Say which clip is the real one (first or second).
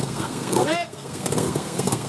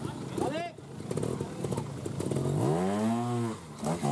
second